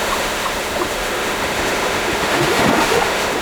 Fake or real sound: fake